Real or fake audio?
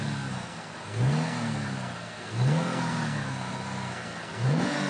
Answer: fake